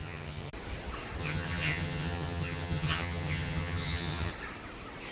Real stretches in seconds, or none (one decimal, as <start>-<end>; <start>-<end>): 0.5-1.2; 4.3-5.1